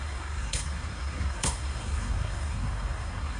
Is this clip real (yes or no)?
no